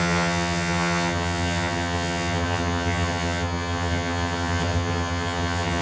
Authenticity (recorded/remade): remade